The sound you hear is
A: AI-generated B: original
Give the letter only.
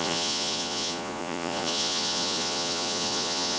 A